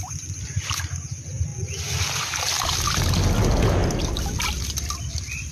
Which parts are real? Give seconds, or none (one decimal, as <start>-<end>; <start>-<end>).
0.0-5.5